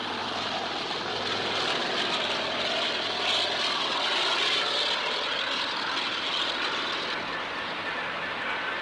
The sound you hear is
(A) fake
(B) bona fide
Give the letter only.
B